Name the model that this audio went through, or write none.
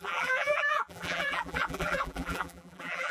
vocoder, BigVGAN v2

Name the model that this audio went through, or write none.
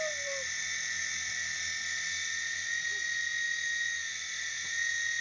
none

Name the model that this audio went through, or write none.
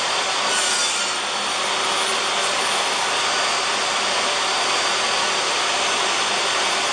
none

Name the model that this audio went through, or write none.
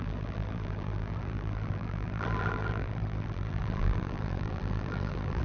vocoder, BigVGAN v2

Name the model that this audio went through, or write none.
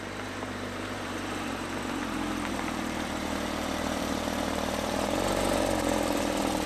vocoder, BigVGAN v2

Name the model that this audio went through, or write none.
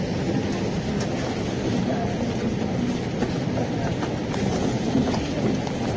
none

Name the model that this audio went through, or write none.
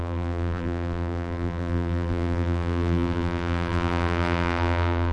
vocoder, BigVGAN v2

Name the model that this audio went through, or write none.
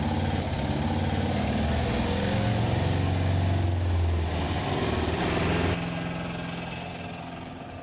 none